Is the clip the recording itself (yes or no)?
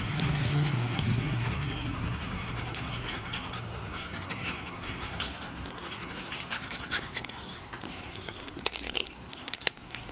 no